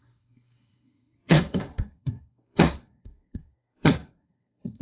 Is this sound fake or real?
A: fake